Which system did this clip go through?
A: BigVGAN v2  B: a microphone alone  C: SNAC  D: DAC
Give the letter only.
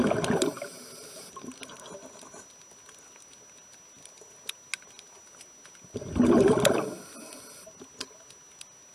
B